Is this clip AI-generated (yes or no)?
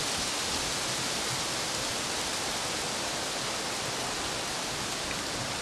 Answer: no